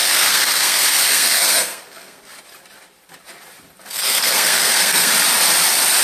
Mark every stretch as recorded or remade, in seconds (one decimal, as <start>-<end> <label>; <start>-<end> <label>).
0.0-2.2 remade; 2.2-3.9 recorded; 3.9-5.1 remade; 5.1-6.0 recorded